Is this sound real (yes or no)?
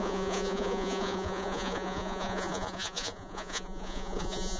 no